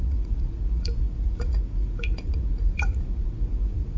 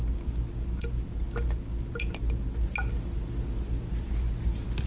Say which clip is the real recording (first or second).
second